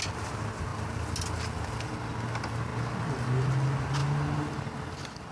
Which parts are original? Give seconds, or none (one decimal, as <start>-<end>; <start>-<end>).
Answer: 0.0-5.3